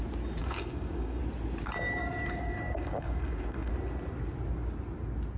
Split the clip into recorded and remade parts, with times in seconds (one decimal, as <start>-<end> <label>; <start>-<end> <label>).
0.0-0.4 recorded; 0.4-1.2 remade; 1.2-2.0 recorded; 2.0-3.7 remade; 3.7-5.4 recorded